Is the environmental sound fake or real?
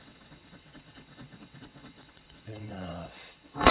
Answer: fake